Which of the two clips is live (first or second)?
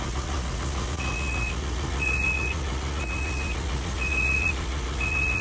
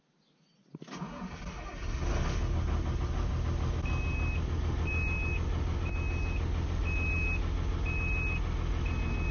second